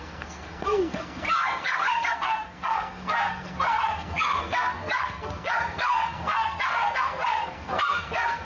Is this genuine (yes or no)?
no